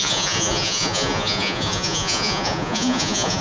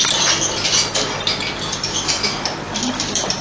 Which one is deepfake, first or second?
first